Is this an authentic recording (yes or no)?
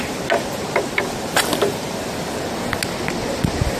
yes